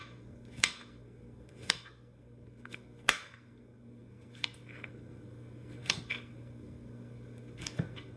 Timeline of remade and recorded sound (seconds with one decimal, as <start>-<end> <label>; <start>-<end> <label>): 0.0-8.2 remade